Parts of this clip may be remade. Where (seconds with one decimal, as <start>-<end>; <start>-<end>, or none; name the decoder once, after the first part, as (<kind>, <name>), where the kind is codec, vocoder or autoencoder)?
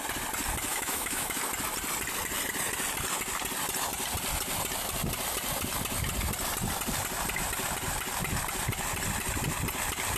0.7-1.4 (autoencoder, DAC-VAE)